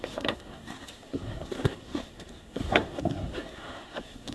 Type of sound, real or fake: fake